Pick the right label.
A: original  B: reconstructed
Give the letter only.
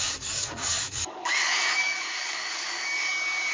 B